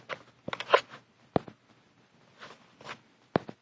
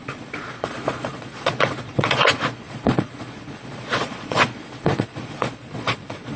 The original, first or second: first